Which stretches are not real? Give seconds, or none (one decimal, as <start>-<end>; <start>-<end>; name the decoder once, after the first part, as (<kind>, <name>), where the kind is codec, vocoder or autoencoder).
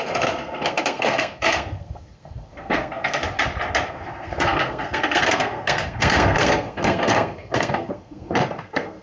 0.0-3.2 (codec, SNAC); 3.9-9.0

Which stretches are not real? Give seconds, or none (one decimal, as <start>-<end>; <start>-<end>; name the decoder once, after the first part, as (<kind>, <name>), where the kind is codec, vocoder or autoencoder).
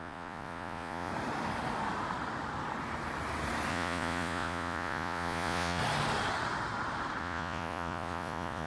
0.0-1.1 (vocoder, Vocos); 3.7-5.8; 7.2-8.7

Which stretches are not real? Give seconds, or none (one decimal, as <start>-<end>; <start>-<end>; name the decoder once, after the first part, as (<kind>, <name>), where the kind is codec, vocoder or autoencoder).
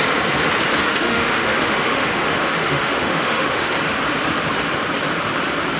0.8-3.7 (autoencoder, DAC-VAE)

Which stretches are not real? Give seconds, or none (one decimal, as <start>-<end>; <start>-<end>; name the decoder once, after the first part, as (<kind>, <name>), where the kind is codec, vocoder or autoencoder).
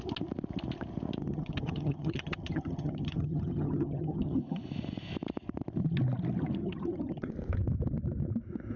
1.2-4.4 (vocoder, HiFi-GAN); 6.6-7.3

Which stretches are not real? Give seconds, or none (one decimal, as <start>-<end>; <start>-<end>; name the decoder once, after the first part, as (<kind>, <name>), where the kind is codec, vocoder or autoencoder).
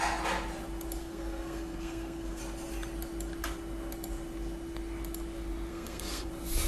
1.0-2.4 (codec, SNAC); 5.7-6.3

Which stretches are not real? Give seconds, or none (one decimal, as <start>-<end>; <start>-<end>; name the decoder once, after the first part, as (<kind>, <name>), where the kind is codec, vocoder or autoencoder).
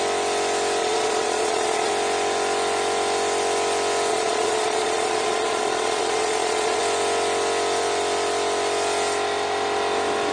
0.8-1.9 (vocoder, Vocos); 4.1-6.8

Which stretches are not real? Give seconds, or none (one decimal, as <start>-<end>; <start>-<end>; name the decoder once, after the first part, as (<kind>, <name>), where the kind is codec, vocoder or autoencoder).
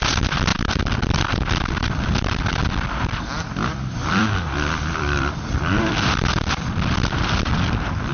0.0-8.1 (vocoder, BigVGAN v2)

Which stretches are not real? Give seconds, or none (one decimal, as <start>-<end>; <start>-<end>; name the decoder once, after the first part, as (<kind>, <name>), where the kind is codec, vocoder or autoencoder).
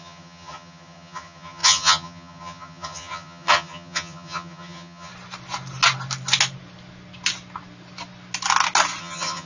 0.0-5.1 (vocoder, HiFi-GAN); 9.0-9.5